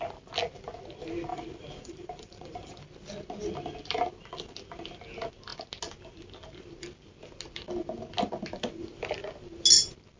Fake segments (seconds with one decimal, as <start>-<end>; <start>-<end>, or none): 1.3-2.8